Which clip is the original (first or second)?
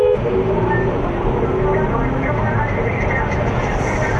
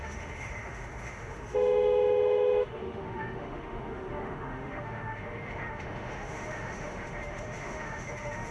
first